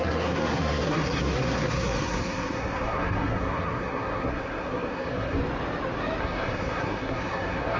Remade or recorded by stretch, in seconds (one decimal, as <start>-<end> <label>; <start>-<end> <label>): 0.0-5.4 remade; 5.4-6.2 recorded; 6.2-7.8 remade